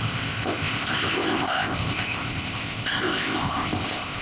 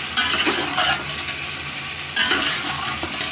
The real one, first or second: second